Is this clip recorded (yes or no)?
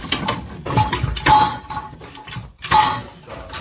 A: yes